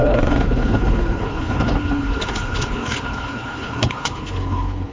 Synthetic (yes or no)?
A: yes